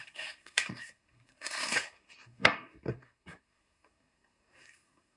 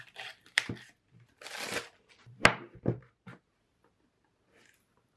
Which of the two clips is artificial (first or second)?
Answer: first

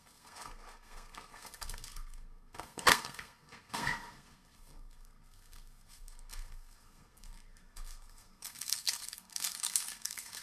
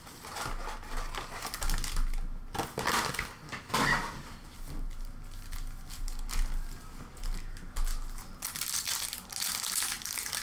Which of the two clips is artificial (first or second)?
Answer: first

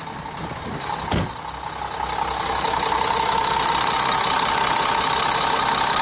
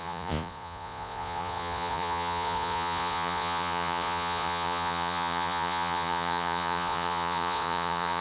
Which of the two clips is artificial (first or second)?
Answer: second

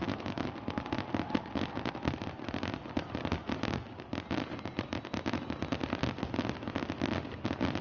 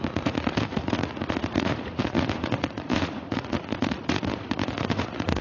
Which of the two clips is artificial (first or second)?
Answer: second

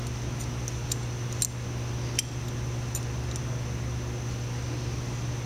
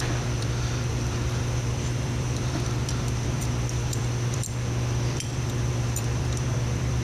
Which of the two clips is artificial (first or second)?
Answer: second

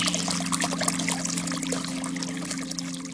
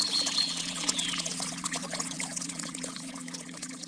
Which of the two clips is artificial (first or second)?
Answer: second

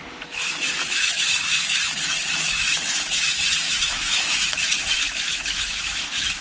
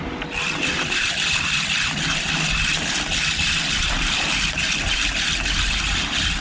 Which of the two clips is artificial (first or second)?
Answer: first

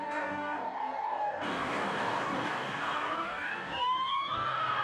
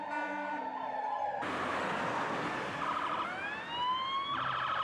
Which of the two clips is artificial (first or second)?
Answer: first